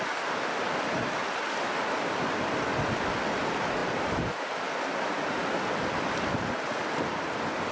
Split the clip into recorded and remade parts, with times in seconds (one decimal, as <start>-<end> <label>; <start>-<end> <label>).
0.0-1.2 remade; 1.2-2.0 recorded; 2.0-3.8 remade; 3.8-4.9 recorded; 4.9-5.4 remade; 5.4-6.3 recorded; 6.3-7.7 remade